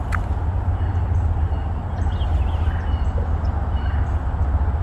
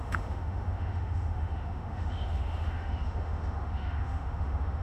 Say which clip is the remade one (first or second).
second